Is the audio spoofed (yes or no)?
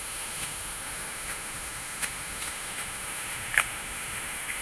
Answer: yes